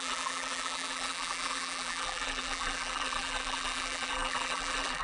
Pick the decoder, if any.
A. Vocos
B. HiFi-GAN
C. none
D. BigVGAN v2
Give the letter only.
D